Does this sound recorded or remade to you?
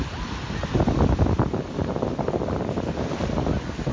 recorded